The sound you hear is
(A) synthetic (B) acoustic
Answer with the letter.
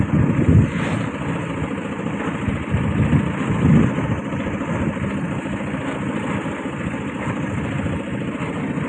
B